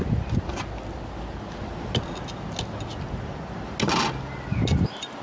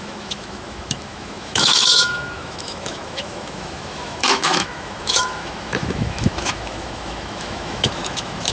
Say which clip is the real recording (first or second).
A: first